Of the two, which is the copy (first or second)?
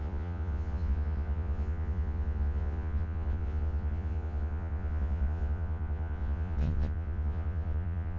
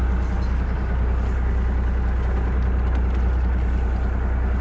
first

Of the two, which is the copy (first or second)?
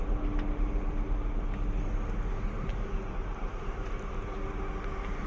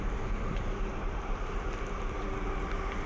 second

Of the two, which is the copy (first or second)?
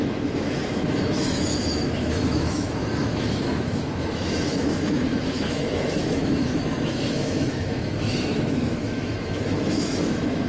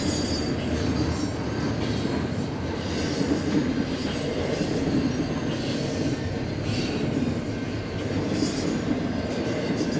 first